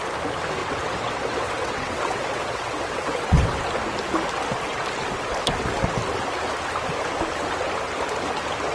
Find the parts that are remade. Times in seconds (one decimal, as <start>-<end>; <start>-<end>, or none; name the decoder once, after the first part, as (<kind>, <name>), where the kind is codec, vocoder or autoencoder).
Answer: 0.6-3.6 (vocoder, WaveNeXt)

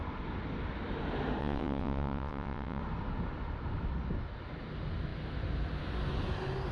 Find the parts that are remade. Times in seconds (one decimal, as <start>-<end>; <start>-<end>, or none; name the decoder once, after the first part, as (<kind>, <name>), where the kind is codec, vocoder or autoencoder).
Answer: 1.4-2.8 (vocoder, WaveNeXt)

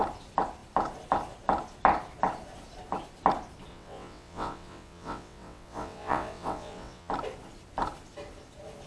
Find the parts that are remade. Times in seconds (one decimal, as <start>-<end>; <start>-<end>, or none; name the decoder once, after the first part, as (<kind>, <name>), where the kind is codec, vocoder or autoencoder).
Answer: 3.7-7.1 (vocoder, WaveNeXt)